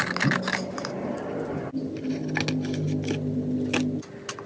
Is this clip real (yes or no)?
yes